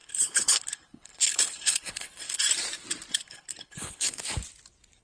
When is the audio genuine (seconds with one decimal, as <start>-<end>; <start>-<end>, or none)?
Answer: 2.4-3.1; 4.2-5.0